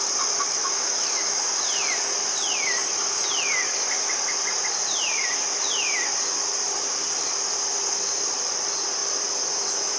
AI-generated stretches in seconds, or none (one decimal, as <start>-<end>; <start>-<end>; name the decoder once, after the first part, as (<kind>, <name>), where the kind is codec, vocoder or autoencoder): 0.6-1.4 (autoencoder, DAC-VAE)